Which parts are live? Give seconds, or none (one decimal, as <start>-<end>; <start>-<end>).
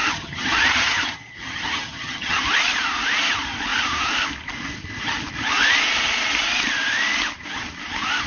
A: 2.4-8.3